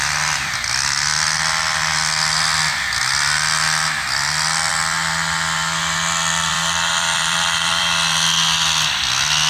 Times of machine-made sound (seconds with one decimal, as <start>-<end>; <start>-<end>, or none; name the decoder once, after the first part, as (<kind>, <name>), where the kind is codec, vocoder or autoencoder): 6.5-7.8 (vocoder, BigVGAN v2)